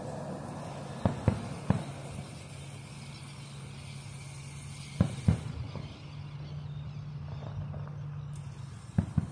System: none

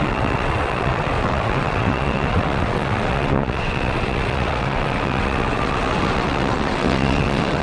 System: vocoder, WaveNeXt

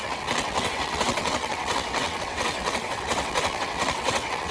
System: vocoder, WaveNeXt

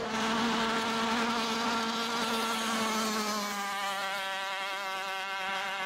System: none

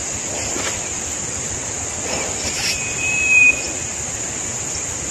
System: none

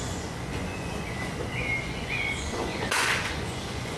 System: vocoder, Vocos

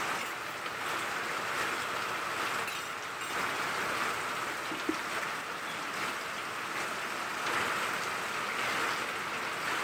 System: none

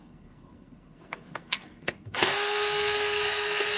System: codec, SNAC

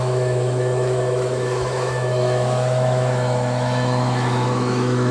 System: autoencoder, DAC-VAE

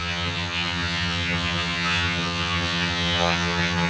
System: vocoder, HiFi-GAN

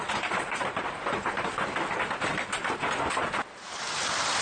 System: vocoder, BigVGAN v2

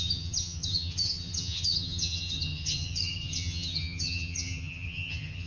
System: vocoder, HiFi-GAN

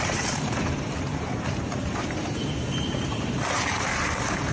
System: vocoder, BigVGAN v2